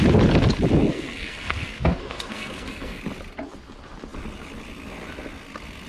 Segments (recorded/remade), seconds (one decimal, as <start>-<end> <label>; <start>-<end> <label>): 0.0-0.9 recorded; 0.9-3.0 remade; 3.0-5.9 recorded